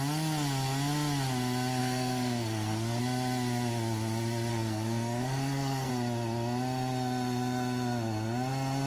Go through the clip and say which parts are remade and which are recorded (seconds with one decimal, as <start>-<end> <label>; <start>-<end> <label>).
0.0-1.8 recorded; 1.8-3.0 remade; 3.0-4.5 recorded; 4.5-5.9 remade; 5.9-8.9 recorded